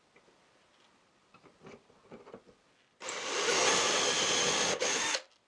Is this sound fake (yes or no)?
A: no